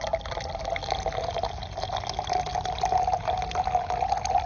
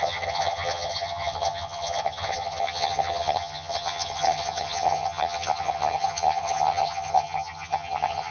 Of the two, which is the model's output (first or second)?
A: second